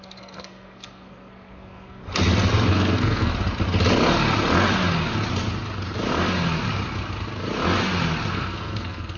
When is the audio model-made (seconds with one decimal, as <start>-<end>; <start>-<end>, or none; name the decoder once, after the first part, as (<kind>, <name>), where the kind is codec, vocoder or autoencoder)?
0.0-2.0 (codec, SNAC); 2.7-3.3; 8.3-9.2

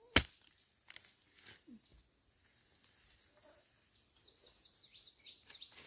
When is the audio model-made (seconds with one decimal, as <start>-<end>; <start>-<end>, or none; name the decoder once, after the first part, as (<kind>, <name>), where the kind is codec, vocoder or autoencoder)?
none

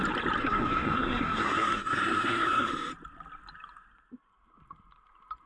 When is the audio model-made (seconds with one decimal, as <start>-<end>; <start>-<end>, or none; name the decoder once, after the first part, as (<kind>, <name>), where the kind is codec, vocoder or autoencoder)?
0.4-2.7 (codec, SNAC)

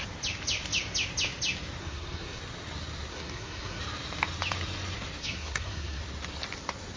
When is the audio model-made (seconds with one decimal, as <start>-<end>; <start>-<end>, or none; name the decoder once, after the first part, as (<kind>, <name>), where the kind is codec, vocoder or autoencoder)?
1.8-2.4 (codec, SNAC); 3.1-3.8; 5.2-6.0

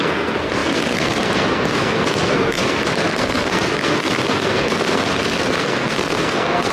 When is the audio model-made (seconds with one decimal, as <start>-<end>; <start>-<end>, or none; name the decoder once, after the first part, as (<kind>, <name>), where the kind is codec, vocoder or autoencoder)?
0.0-6.7 (codec, SNAC)

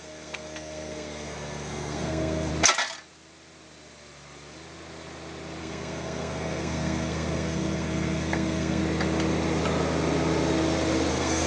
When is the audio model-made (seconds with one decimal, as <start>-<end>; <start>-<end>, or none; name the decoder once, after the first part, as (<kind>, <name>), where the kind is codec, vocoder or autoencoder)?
0.0-2.5 (codec, SNAC); 5.6-8.8; 11.1-11.5